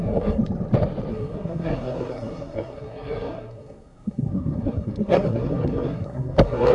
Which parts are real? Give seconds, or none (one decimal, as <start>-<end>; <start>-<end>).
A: 0.4-1.1